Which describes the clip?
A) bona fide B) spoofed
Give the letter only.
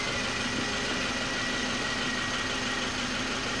A